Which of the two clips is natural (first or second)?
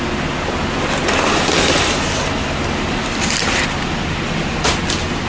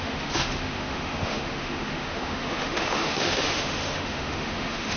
first